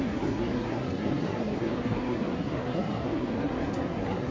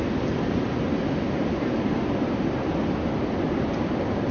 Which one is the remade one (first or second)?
first